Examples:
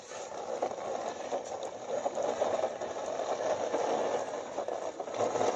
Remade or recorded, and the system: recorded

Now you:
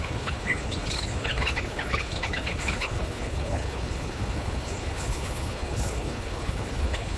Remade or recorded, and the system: remade, codec, HILCodec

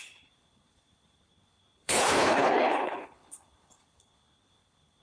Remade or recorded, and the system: remade, codec, HILCodec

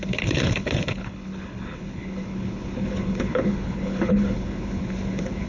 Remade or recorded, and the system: remade, codec, HILCodec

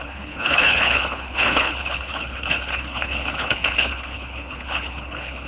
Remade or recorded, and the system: remade, codec, HILCodec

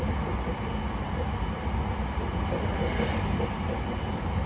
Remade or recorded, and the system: recorded